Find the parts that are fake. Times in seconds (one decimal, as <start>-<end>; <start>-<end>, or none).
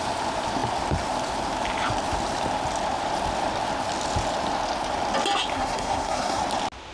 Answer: 5.5-6.4